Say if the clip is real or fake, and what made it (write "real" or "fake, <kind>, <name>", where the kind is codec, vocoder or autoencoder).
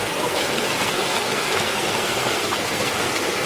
fake, codec, SNAC